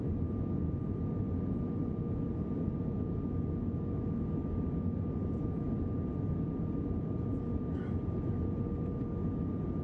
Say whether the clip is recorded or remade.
recorded